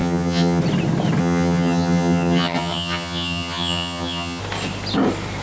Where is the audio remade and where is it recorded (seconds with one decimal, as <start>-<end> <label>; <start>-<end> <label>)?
0.0-0.6 remade; 0.6-1.2 recorded; 1.2-4.4 remade; 4.4-5.4 recorded